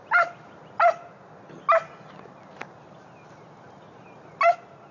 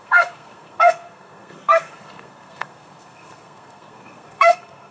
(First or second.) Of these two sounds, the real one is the first